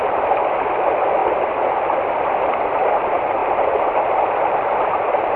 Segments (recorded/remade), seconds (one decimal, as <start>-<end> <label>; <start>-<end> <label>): 0.0-5.4 recorded